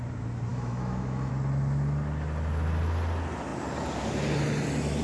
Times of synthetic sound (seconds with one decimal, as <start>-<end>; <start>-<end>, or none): 0.5-1.3

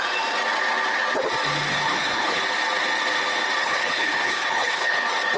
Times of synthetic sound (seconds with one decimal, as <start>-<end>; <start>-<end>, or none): 1.7-2.4; 3.6-5.0

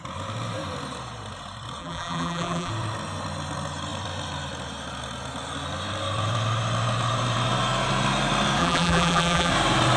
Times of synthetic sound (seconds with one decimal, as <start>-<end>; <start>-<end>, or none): 1.8-2.7; 8.6-9.5

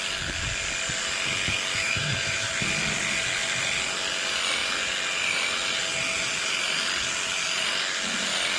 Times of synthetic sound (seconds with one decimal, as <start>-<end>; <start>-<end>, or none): 1.8-2.5

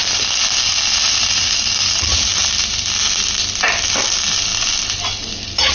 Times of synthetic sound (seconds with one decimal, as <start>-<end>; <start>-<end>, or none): none